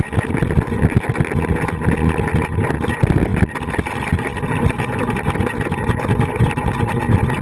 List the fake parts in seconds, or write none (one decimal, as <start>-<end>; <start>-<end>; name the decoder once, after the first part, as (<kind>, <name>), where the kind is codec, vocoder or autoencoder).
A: none